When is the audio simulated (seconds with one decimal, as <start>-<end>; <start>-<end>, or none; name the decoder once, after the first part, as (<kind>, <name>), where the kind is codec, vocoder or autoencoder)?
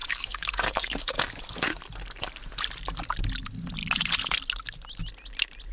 0.0-1.8 (codec, DAC)